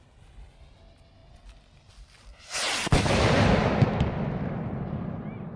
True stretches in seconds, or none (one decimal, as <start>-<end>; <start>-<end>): 0.0-5.6